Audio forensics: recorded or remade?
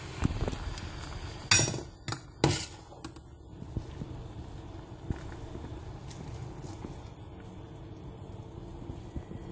recorded